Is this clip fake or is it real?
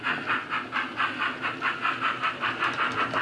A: real